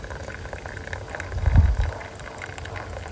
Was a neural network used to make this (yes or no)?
no